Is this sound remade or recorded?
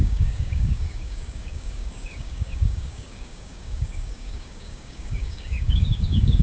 remade